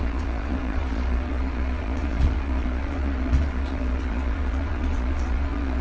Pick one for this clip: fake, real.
fake